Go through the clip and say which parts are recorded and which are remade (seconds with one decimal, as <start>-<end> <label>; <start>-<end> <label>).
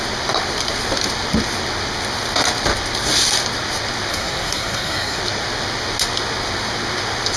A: 0.0-4.1 recorded; 4.1-5.2 remade; 5.2-7.4 recorded